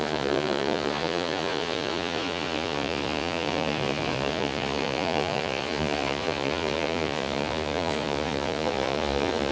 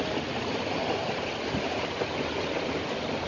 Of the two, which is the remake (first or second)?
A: first